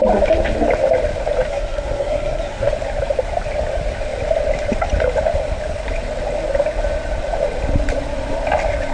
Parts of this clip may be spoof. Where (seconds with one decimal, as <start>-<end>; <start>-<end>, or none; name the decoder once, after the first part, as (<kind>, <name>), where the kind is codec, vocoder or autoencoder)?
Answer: 1.5-2.7 (codec, SNAC)